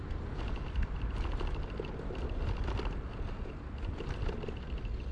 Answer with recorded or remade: recorded